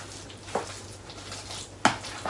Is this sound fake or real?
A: real